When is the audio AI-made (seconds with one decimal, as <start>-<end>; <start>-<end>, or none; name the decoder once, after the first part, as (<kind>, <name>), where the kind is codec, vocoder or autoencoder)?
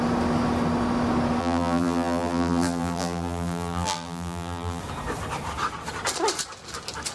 1.4-4.8 (vocoder, BigVGAN v2)